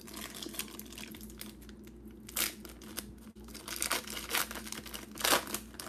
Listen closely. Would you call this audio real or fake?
real